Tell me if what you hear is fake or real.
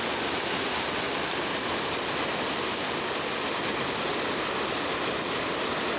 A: real